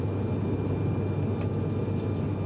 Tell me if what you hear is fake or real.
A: real